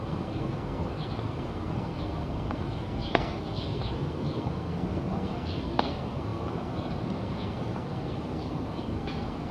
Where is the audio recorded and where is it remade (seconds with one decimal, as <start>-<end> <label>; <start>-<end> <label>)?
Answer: 0.0-9.5 remade